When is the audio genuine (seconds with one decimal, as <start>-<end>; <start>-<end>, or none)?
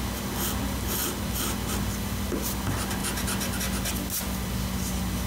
0.0-5.3